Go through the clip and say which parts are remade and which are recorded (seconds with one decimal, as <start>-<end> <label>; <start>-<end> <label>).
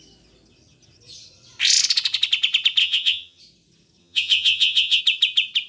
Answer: 0.0-2.8 recorded; 2.8-3.4 remade; 3.4-4.0 recorded; 4.0-5.0 remade; 5.0-5.7 recorded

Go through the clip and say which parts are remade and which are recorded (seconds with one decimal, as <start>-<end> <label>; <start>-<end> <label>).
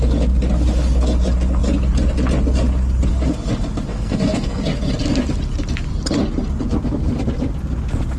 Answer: 0.0-3.9 recorded; 3.9-4.6 remade; 4.6-8.2 recorded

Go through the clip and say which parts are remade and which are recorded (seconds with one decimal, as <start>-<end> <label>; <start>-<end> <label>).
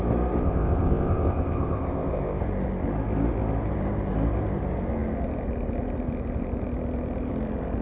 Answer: 0.0-0.4 recorded; 0.4-2.4 remade; 2.4-7.8 recorded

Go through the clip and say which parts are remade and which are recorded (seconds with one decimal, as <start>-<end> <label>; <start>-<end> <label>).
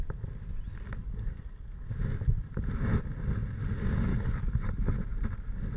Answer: 0.0-1.0 recorded; 1.0-1.8 remade; 1.8-4.1 recorded; 4.1-5.0 remade; 5.0-5.8 recorded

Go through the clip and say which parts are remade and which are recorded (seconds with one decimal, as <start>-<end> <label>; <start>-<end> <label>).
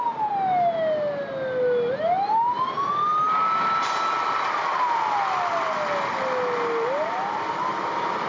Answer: 0.0-8.3 recorded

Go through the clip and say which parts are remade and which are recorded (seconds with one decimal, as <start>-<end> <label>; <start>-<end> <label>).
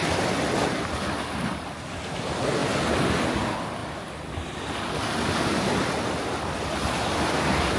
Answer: 0.0-7.8 recorded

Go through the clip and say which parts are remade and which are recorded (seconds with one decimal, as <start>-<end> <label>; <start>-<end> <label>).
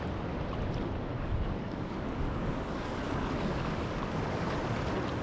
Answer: 0.0-1.1 recorded; 1.1-4.2 remade; 4.2-5.2 recorded